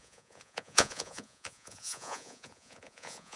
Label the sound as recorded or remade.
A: remade